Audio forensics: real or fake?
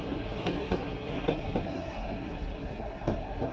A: fake